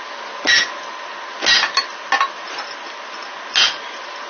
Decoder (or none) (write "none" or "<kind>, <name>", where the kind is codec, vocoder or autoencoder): none